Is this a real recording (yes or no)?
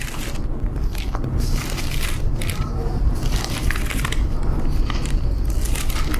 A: yes